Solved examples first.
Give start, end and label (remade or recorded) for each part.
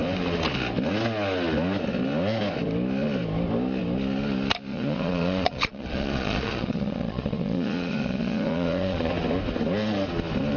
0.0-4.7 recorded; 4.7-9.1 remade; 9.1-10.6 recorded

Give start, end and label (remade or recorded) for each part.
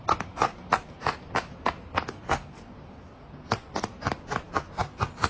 0.0-5.3 recorded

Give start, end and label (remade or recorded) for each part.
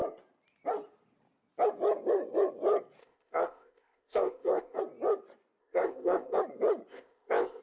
0.0-3.0 recorded; 3.0-4.8 remade; 4.8-5.6 recorded; 5.6-6.4 remade; 6.4-6.9 recorded; 6.9-7.6 remade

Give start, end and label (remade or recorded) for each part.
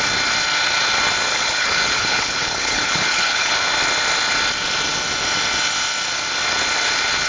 0.0-1.3 recorded; 1.3-3.5 remade; 3.5-7.3 recorded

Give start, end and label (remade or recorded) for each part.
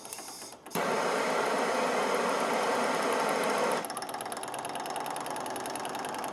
0.0-0.5 recorded; 0.5-3.4 remade; 3.4-6.3 recorded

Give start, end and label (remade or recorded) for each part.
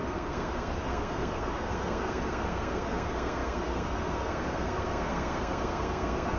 0.0-6.4 remade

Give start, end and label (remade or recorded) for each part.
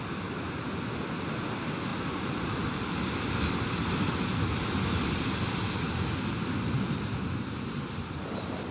0.0-8.7 recorded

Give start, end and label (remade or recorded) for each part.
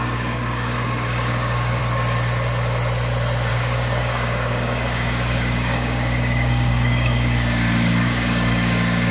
0.0-1.8 remade; 1.8-3.5 recorded; 3.5-9.1 remade